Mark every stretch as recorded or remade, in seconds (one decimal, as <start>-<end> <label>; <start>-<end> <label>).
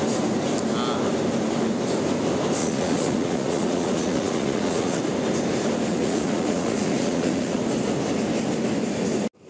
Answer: 0.0-2.6 recorded; 2.6-5.0 remade; 5.0-5.9 recorded; 5.9-7.6 remade; 7.6-9.5 recorded